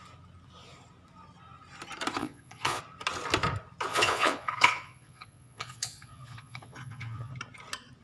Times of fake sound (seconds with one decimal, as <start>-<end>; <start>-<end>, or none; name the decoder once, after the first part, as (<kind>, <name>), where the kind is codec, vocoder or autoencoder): 2.2-2.8 (vocoder, Vocos); 3.9-7.3